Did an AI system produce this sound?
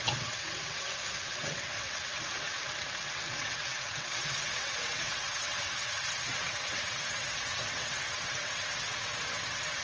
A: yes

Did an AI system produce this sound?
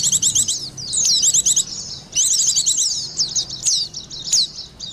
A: no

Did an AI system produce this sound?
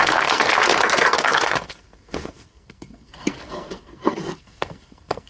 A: yes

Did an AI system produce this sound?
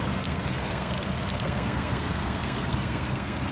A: yes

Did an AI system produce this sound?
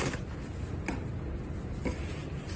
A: no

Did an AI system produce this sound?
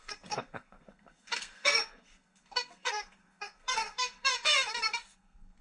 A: yes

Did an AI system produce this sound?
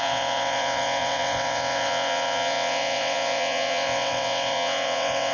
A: yes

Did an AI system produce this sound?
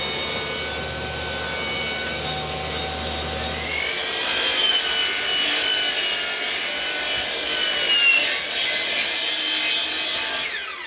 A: no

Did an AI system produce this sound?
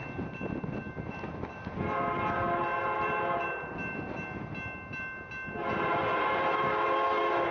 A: no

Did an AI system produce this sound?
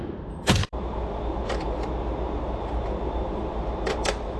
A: yes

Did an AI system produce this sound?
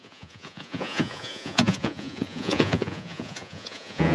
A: yes